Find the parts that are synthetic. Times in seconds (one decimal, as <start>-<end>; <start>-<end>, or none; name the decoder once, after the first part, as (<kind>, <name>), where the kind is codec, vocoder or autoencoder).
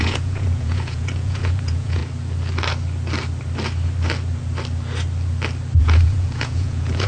0.0-2.0 (vocoder, Vocos); 5.8-7.1